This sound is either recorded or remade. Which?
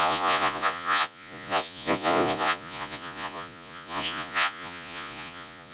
remade